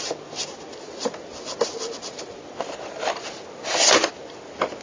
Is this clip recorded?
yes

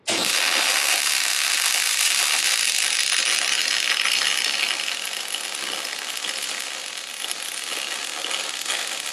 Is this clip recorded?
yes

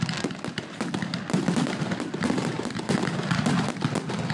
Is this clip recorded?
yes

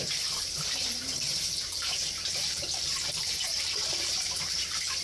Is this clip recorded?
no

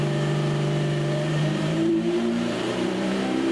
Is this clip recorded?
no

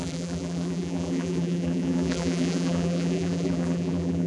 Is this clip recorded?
no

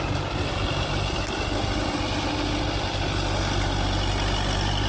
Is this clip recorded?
yes